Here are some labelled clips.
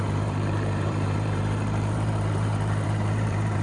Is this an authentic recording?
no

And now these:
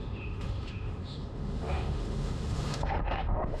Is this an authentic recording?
no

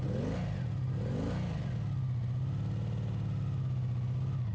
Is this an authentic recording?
yes